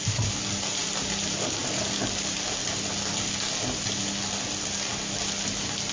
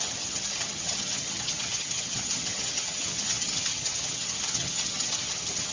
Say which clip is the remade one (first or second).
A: second